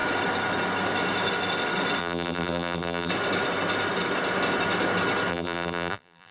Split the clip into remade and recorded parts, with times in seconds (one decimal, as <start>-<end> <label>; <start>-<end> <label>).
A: 0.0-2.0 recorded; 2.0-3.1 remade; 3.1-5.3 recorded; 5.3-6.3 remade